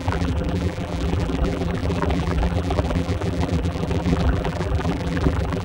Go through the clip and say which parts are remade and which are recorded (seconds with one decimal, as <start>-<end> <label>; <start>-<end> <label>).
0.0-5.6 remade